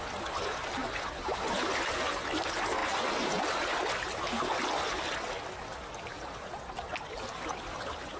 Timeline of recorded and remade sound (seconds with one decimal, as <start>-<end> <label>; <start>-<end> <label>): 0.0-8.2 recorded